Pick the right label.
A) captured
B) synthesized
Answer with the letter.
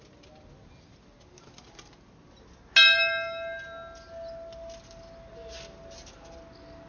A